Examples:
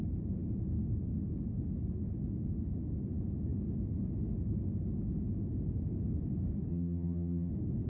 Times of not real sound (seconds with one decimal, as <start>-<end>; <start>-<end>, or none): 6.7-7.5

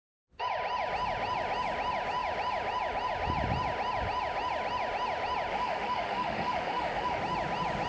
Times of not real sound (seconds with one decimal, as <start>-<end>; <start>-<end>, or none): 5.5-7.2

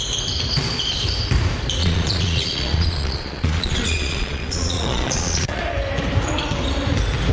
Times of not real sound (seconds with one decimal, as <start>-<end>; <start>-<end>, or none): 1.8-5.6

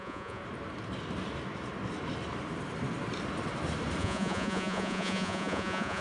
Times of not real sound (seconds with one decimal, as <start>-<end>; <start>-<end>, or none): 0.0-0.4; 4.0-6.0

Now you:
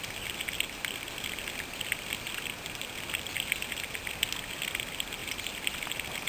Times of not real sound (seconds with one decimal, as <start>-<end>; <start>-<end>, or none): none

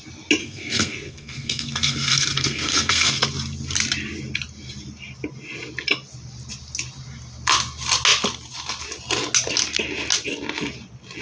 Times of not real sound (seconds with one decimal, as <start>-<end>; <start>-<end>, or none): 0.4-3.2

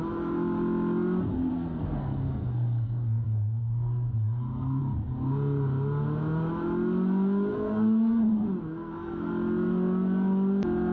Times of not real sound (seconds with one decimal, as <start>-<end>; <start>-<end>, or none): 1.5-4.8; 7.5-8.2; 8.7-9.3